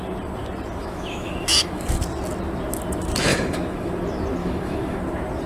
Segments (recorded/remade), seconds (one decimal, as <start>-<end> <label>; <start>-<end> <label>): 0.0-0.8 recorded; 0.8-1.8 remade; 1.8-3.3 recorded; 3.3-3.9 remade; 3.9-4.4 recorded; 4.4-5.0 remade; 5.0-5.5 recorded